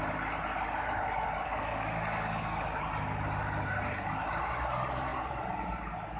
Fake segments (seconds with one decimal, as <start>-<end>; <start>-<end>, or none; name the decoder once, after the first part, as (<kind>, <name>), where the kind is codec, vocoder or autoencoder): 1.7-2.8 (codec, DAC)